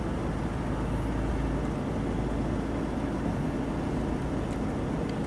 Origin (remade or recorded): recorded